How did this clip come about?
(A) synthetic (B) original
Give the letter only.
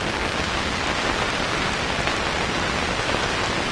B